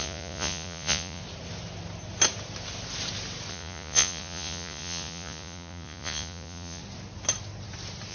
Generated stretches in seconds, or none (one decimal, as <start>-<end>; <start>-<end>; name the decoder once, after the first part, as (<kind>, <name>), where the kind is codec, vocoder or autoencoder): 0.0-1.2 (vocoder, Vocos); 3.5-6.8